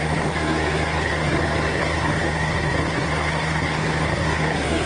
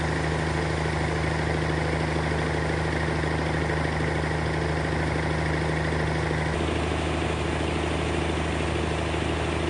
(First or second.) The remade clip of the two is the first